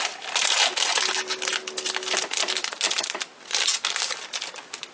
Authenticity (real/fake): real